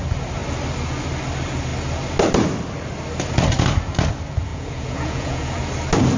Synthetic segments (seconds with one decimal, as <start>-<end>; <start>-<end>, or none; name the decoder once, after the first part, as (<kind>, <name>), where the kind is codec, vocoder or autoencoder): 4.5-5.6 (vocoder, Vocos)